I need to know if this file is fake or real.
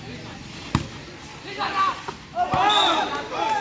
real